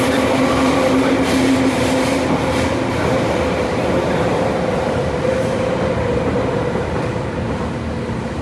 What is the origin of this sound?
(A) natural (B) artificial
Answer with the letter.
A